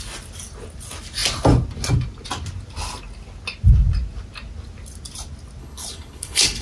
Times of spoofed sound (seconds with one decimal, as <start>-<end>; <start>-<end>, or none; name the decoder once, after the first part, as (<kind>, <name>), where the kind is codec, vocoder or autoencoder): 5.6-6.6 (codec, HILCodec)